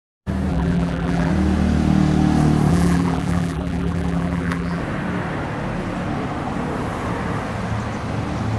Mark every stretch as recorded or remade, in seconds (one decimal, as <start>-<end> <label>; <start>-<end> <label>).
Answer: 0.0-0.5 recorded; 0.5-1.3 remade; 1.3-2.7 recorded; 2.7-4.8 remade; 4.8-8.6 recorded